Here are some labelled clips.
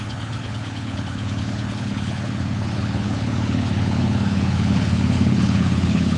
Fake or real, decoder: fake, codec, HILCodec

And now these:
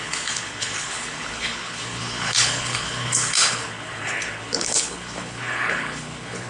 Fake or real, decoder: fake, codec, HILCodec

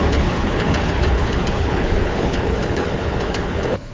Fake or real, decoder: fake, codec, HILCodec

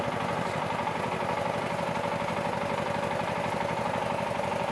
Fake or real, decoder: real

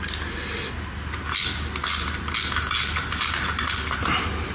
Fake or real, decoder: real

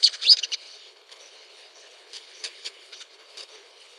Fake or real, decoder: fake, codec, HILCodec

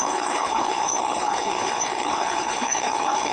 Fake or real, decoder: fake, codec, HILCodec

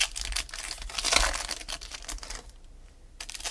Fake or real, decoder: real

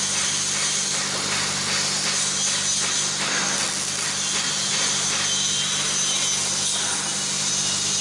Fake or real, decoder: real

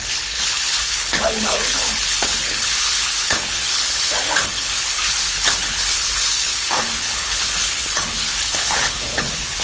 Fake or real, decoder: fake, codec, HILCodec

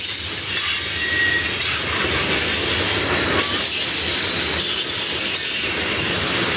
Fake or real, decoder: real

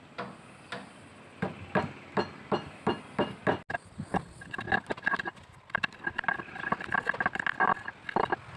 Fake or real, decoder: real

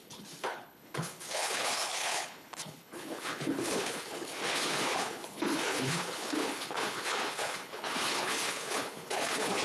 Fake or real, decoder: fake, codec, HILCodec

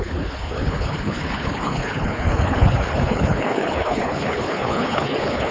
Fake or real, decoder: fake, codec, HILCodec